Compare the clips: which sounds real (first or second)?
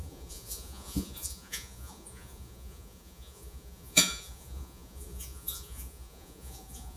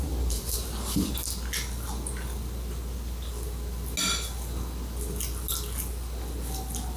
second